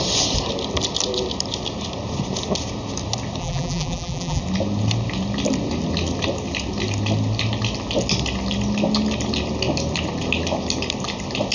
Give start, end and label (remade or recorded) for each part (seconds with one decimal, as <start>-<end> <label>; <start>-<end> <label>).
0.0-3.4 recorded; 3.4-4.4 remade; 4.4-11.5 recorded